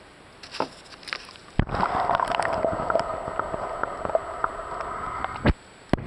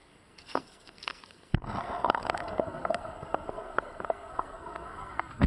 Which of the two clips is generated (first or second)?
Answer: second